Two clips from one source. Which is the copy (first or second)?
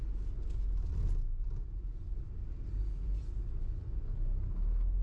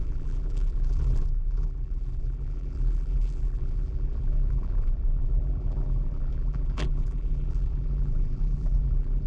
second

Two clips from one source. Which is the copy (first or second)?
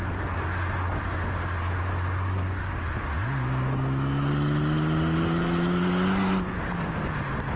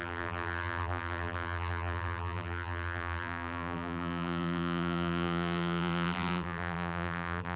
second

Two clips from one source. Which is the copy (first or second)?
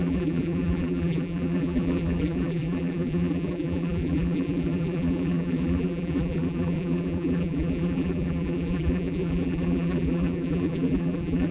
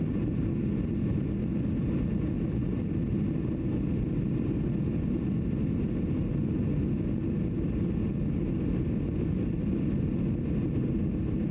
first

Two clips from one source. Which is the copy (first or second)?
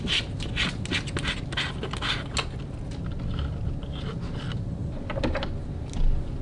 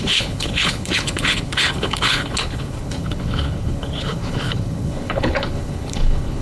second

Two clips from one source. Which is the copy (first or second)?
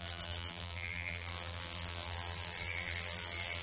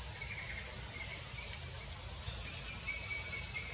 first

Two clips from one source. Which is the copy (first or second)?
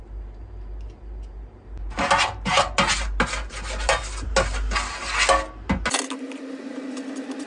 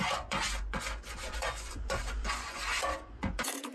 second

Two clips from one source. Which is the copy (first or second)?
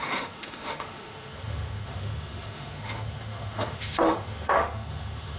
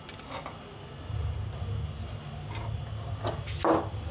first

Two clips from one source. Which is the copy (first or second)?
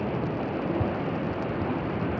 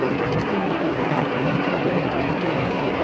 second